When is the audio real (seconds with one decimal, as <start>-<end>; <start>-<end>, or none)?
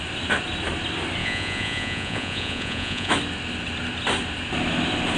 0.0-1.2; 3.1-5.2